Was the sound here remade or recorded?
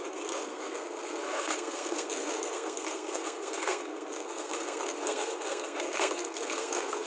remade